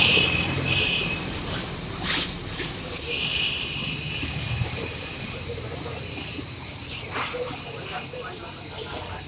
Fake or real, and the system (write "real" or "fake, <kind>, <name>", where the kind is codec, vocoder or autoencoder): fake, vocoder, BigVGAN v2